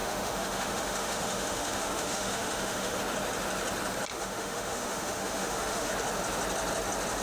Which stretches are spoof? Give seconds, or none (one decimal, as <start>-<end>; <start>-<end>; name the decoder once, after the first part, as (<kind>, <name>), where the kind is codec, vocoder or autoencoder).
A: 0.0-3.0 (autoencoder, DAC-VAE); 4.1-5.9